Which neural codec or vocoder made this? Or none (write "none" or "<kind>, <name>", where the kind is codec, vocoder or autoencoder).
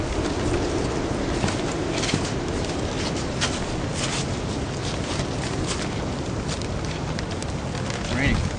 none